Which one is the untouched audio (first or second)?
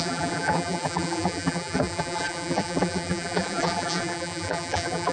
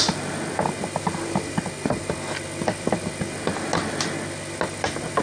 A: second